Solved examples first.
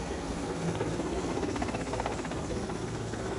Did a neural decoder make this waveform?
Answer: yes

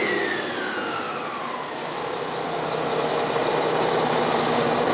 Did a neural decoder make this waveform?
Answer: no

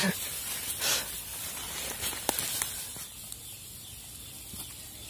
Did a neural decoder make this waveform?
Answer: no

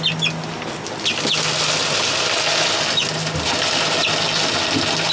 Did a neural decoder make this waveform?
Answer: no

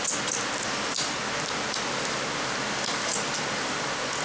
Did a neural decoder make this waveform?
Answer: no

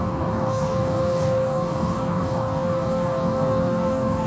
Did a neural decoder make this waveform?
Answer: yes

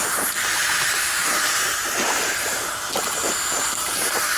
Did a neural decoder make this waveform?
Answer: yes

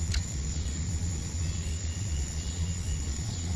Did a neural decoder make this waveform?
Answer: yes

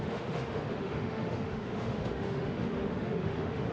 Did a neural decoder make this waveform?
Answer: yes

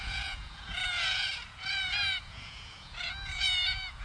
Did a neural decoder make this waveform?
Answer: yes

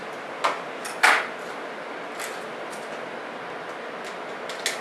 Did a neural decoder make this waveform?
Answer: no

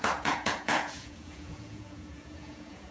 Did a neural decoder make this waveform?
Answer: yes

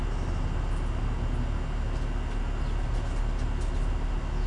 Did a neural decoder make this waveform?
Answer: no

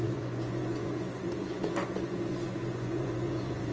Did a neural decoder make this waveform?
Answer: yes